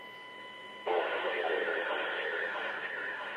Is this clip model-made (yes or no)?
no